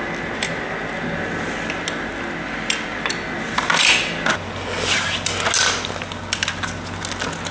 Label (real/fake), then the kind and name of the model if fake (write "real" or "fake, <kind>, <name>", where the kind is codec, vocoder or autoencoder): real